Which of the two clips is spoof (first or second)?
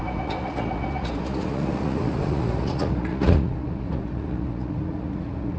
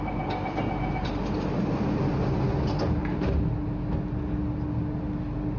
first